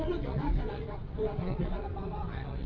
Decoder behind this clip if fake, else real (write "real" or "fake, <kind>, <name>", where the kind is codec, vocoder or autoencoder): fake, vocoder, WaveNeXt